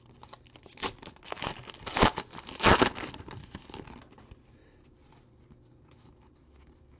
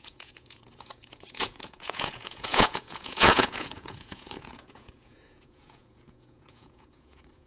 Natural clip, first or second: first